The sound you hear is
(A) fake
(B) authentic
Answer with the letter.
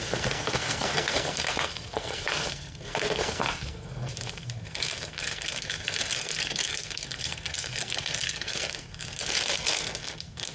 A